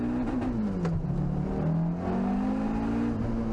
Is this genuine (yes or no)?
yes